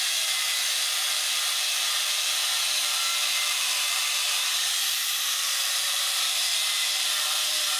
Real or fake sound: fake